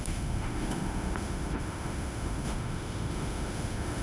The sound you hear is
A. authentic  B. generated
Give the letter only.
B